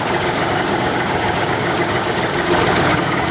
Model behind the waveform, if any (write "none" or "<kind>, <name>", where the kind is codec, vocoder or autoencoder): codec, DAC